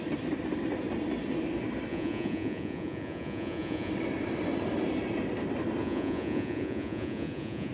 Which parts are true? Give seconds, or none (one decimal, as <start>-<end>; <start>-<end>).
0.0-1.9; 3.9-5.8